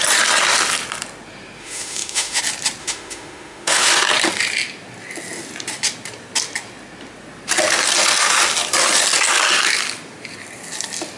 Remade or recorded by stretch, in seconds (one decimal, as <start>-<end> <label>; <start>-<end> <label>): 0.0-1.6 recorded; 1.6-2.4 remade; 2.4-2.8 recorded; 2.8-3.9 remade; 3.9-11.2 recorded